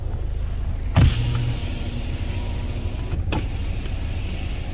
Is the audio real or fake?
real